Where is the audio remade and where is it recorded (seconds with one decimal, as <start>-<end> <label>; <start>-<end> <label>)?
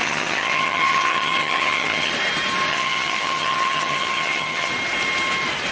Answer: 0.0-2.1 remade; 2.1-2.7 recorded; 2.7-4.7 remade; 4.7-5.7 recorded